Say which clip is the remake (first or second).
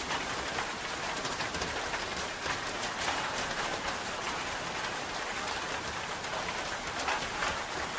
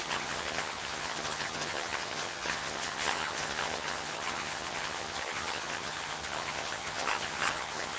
second